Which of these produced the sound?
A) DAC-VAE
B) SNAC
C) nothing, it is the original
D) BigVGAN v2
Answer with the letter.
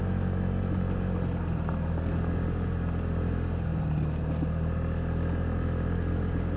C